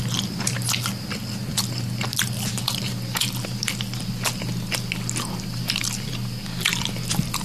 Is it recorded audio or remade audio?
recorded